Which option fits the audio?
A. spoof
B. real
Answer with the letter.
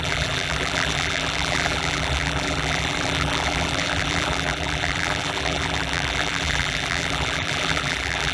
A